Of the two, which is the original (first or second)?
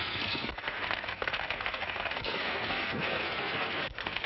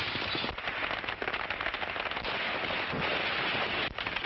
second